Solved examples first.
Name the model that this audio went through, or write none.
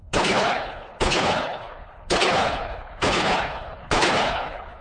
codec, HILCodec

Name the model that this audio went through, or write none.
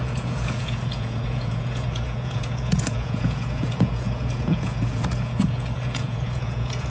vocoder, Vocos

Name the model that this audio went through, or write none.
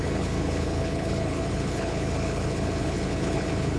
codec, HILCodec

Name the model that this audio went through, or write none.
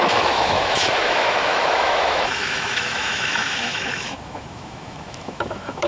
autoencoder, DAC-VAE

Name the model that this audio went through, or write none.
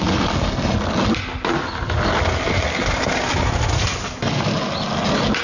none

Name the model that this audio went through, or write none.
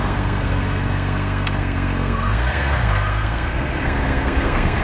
codec, SNAC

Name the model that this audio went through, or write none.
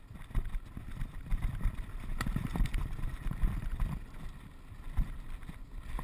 none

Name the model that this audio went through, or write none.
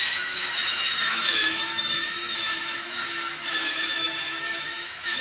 autoencoder, DAC-VAE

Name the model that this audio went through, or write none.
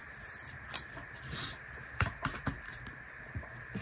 vocoder, BigVGAN v2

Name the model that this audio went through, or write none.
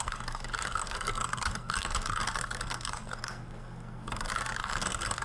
codec, SNAC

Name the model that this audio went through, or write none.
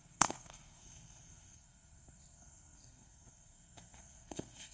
codec, SNAC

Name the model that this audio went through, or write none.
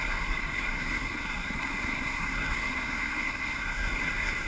codec, SNAC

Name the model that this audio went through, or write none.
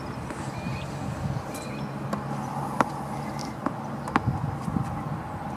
none